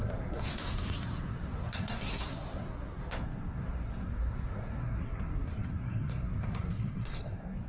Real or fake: fake